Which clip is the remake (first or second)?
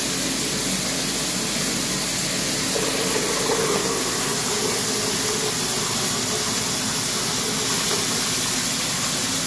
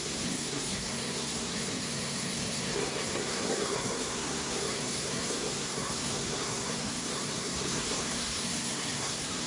second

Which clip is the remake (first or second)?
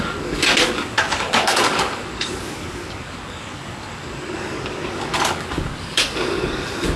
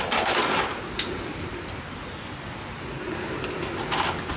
first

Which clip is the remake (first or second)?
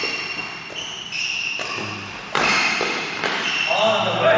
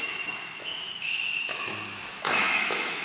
second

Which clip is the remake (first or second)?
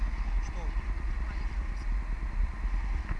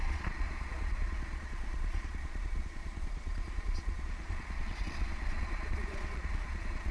second